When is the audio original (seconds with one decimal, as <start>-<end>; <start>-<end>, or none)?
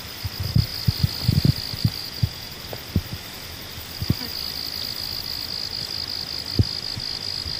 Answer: 0.0-2.0; 2.6-7.6